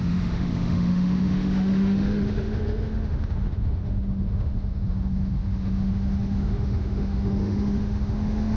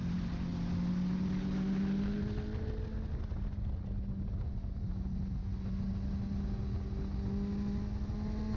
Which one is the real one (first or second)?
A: second